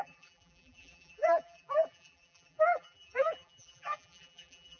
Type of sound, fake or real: fake